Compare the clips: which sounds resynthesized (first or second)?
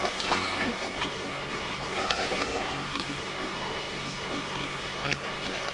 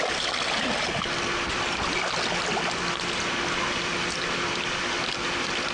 first